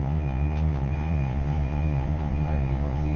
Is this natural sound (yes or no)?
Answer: no